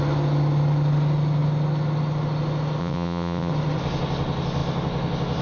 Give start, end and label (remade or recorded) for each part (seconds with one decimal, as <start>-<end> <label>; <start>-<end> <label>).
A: 0.0-2.8 recorded; 2.8-3.5 remade; 3.5-5.4 recorded